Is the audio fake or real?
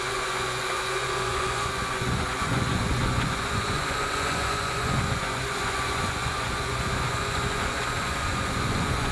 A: fake